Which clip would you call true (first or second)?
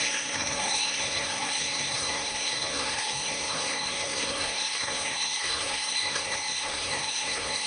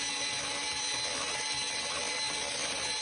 second